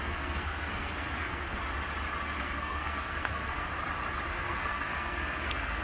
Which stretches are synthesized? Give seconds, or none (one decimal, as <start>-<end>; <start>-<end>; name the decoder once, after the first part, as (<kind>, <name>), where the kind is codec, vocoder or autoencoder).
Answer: 0.0-1.6 (codec, SNAC); 2.4-3.7; 4.3-5.8